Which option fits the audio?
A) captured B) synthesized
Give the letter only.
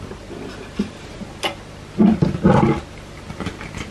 A